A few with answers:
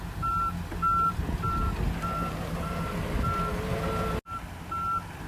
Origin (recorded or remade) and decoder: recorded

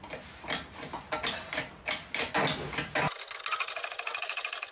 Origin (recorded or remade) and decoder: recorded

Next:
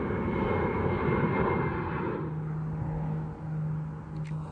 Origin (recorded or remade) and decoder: recorded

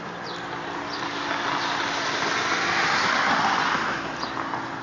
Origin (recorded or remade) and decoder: recorded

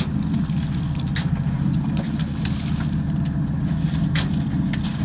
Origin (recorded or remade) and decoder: recorded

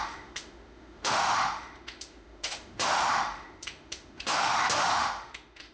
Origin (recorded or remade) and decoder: remade, autoencoder, DAC-VAE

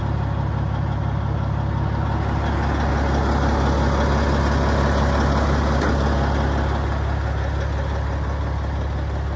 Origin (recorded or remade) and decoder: recorded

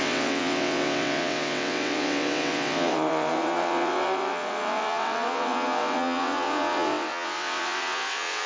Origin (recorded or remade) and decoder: remade, vocoder, WaveNeXt